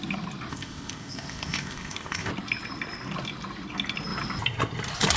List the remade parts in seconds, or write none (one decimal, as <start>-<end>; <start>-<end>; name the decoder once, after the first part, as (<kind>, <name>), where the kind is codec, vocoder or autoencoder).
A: 0.5-2.3 (codec, ZipCodec)